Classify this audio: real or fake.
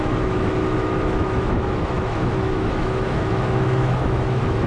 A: fake